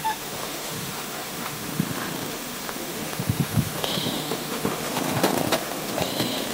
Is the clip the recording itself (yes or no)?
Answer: no